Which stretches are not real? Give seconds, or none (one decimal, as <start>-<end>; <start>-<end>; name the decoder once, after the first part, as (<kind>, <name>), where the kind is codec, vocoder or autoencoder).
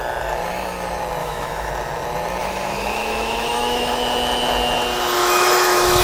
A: 1.2-1.7 (autoencoder, DAC-VAE); 2.4-3.9; 5.2-6.0